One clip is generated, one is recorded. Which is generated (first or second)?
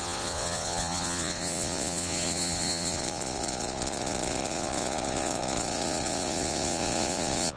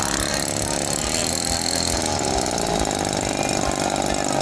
first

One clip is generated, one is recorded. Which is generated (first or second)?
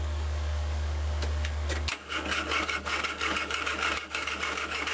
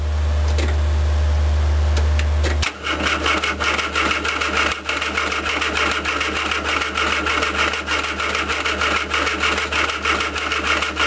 first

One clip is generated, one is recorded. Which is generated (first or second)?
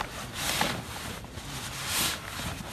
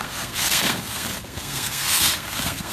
second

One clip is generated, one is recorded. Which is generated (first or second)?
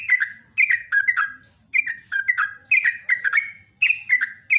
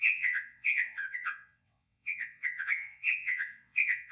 second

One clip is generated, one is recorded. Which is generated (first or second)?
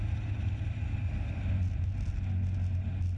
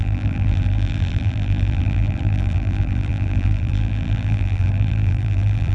second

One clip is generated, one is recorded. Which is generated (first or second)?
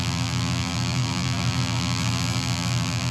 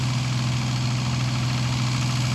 first